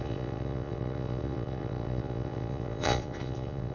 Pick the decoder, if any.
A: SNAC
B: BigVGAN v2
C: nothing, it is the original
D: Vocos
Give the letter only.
D